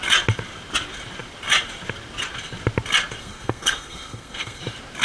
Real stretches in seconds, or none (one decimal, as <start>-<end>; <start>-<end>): 0.0-3.2; 4.6-5.0